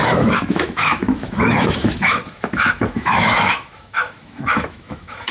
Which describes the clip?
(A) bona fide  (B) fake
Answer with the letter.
B